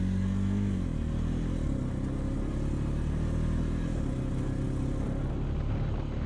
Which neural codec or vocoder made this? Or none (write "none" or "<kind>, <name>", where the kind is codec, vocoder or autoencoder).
none